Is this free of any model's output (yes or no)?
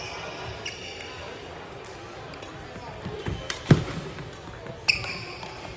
yes